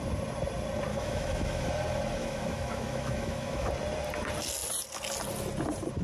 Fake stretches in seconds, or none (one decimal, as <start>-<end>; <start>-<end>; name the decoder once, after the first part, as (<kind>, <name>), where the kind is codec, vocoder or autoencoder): 0.9-1.7 (autoencoder, DAC-VAE); 2.2-3.7